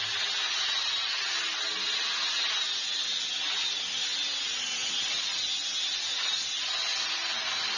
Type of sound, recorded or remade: recorded